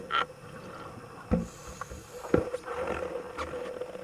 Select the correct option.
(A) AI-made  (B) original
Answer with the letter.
B